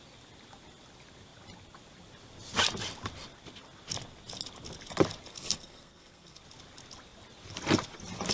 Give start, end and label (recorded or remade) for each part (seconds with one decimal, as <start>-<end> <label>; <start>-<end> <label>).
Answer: 0.0-5.3 recorded; 5.3-6.4 remade; 6.4-8.3 recorded